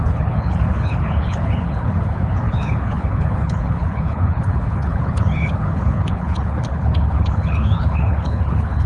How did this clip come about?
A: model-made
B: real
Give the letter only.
A